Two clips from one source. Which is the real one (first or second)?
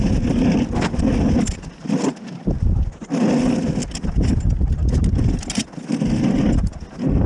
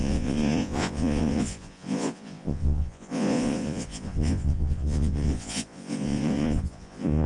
first